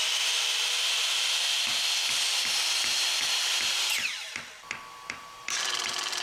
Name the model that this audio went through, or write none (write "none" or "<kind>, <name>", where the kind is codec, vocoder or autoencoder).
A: vocoder, BigVGAN v2